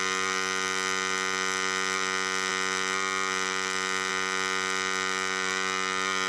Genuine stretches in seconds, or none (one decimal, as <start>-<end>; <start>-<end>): 0.0-6.3